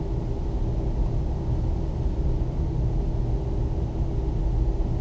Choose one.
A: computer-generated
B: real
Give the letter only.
B